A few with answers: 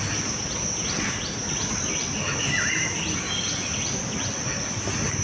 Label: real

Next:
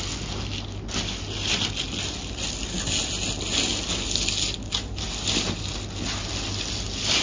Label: real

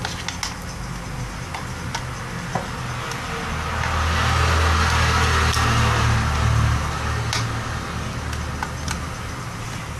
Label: real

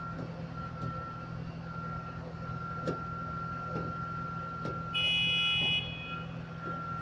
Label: real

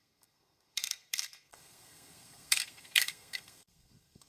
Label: fake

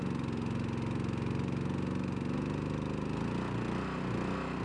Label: real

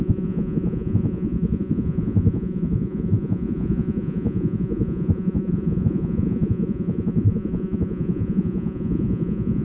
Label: fake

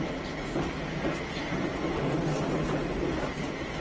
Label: real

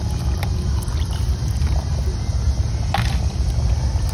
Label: real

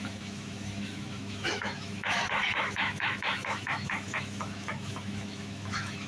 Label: fake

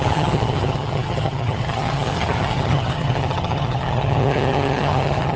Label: fake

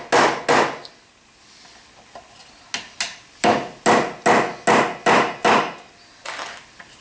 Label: real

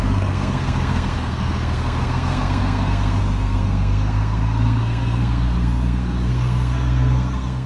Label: fake